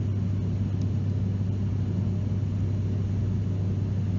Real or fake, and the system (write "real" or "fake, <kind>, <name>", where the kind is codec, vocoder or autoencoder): real